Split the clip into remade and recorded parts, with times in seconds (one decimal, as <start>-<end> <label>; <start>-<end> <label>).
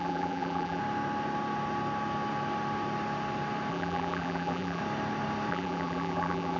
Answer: 0.0-0.8 remade; 0.8-3.7 recorded; 3.7-4.8 remade; 4.8-5.5 recorded; 5.5-6.6 remade